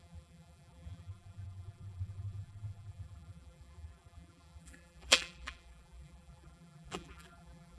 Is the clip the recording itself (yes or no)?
no